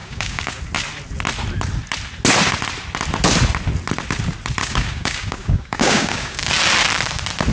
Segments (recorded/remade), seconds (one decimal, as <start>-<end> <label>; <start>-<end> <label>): 0.0-0.6 remade; 0.6-4.6 recorded; 4.6-6.5 remade; 6.5-7.5 recorded